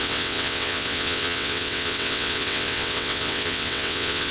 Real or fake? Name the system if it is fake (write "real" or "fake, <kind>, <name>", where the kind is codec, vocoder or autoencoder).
fake, vocoder, WaveNeXt